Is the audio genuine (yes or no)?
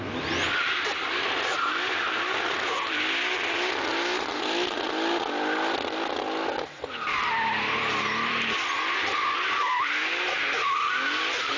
yes